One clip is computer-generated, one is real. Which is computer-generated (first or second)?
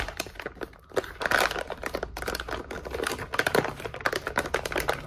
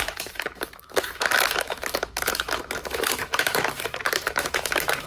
second